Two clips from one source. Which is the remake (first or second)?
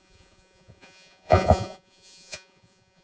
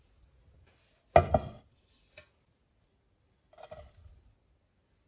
first